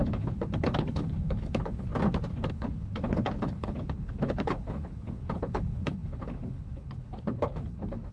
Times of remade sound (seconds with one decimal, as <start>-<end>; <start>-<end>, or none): 0.0-1.9; 2.5-8.1